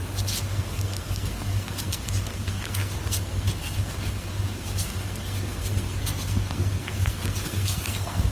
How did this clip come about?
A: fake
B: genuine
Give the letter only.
A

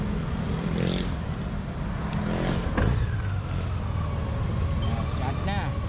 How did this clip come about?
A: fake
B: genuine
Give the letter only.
B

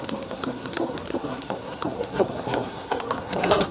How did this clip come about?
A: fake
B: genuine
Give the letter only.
A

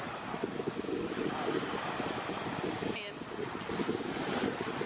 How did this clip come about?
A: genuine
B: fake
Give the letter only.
A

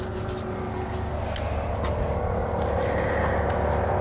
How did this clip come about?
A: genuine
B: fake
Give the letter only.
A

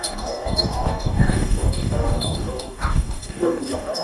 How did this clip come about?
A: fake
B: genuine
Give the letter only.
A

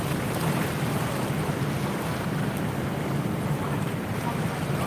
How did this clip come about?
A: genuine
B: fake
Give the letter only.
A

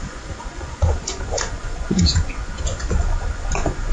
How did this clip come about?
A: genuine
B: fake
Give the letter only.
B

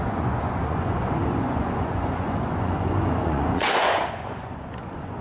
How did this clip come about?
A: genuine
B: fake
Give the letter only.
B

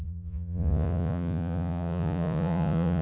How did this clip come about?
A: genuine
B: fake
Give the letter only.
B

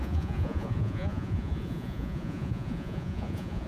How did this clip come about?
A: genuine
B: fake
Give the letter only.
B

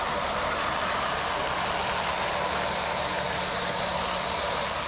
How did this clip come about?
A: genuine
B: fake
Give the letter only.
A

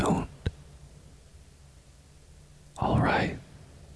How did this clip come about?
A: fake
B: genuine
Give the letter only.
B